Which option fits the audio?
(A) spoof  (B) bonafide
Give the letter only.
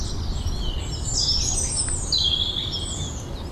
B